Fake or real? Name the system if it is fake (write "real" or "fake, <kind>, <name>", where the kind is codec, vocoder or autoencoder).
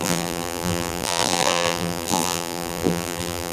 fake, vocoder, BigVGAN v2